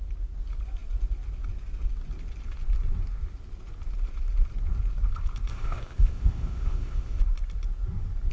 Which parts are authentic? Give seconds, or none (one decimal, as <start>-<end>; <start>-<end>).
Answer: 0.0-5.5; 7.2-8.3